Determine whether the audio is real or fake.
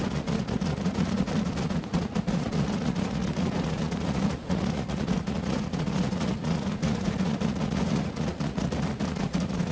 fake